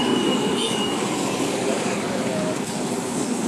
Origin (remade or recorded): remade